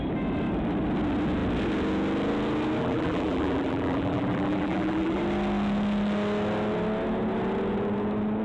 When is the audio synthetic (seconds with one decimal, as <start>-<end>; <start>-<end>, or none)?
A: 2.8-5.2